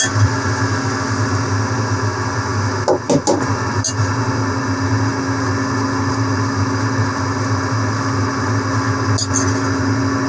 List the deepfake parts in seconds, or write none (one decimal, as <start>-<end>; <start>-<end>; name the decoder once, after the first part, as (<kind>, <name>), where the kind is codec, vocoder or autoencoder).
none